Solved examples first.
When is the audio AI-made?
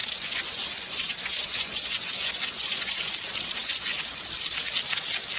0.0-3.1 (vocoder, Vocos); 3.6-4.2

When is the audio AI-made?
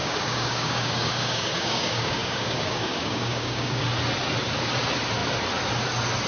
0.0-3.8 (codec, DAC)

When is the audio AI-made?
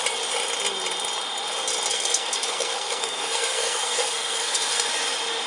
1.9-4.9 (codec, SNAC)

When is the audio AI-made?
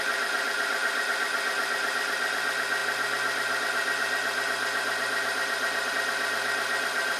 none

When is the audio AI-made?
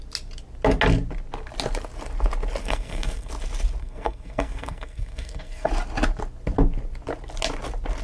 2.6-3.3 (codec, SNAC); 3.8-5.7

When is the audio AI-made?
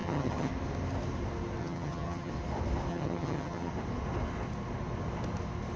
0.0-0.5 (vocoder, HiFi-GAN); 1.6-2.3; 2.9-3.7